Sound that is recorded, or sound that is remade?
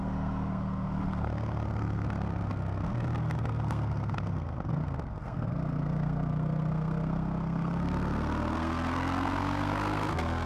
remade